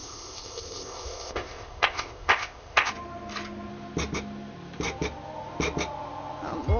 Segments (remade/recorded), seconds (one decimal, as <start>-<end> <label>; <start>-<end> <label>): 0.0-2.9 remade; 2.9-6.8 recorded